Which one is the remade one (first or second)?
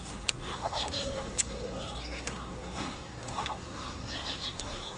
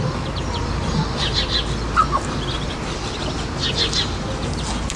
first